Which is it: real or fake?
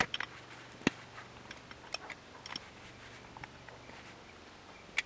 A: real